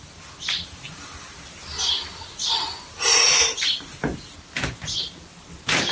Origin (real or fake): real